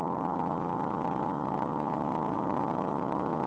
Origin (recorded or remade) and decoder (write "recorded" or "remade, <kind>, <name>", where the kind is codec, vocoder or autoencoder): remade, vocoder, Vocos